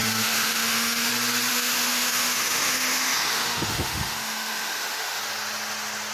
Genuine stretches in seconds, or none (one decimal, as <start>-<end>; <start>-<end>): 1.1-1.5; 5.2-6.1